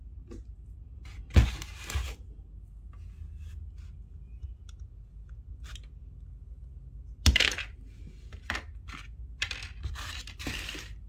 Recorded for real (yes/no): yes